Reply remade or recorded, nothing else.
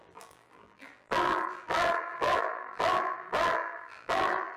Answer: remade